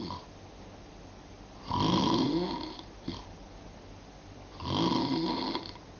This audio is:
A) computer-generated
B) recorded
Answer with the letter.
B